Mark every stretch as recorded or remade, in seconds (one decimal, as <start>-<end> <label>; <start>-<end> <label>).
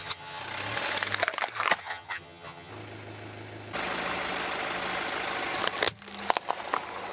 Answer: 0.0-0.4 remade; 0.4-1.8 recorded; 1.8-2.7 remade; 2.7-7.1 recorded